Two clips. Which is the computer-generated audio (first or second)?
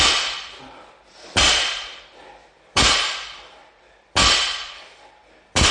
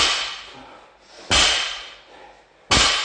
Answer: first